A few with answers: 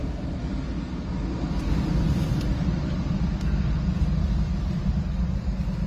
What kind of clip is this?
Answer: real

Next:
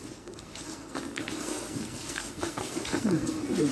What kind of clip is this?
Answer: fake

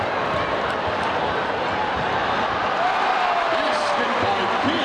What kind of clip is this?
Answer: real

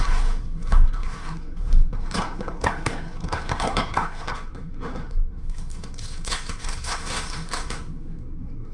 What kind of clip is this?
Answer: fake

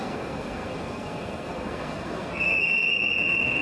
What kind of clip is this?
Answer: fake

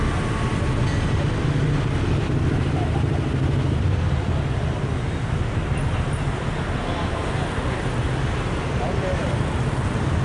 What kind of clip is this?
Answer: real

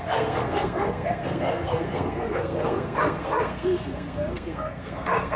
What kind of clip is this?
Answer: fake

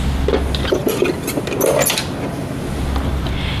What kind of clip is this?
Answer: real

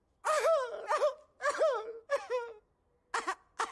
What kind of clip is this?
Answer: real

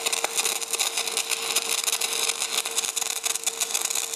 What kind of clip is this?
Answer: real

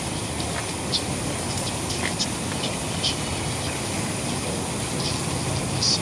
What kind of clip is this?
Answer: real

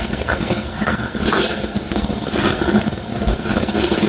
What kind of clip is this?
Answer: fake